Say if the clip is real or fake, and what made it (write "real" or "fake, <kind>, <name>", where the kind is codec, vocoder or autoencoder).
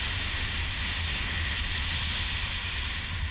real